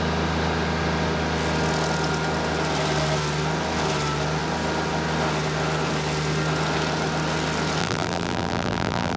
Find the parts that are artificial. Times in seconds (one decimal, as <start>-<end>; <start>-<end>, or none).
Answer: 7.8-9.2